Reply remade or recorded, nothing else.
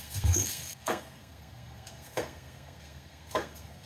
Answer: remade